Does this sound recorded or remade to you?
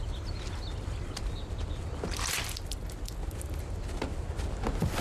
recorded